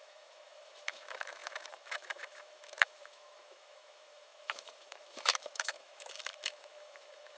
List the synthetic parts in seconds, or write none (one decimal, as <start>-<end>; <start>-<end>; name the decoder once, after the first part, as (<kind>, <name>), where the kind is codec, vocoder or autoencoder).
0.0-7.4 (autoencoder, DAC-VAE)